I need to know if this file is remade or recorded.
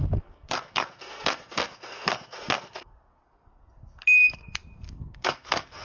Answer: remade